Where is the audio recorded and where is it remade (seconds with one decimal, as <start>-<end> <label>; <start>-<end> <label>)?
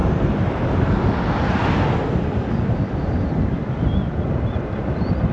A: 0.0-5.3 recorded